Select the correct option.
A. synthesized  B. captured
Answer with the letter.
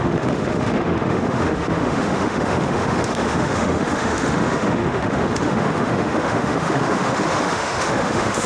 A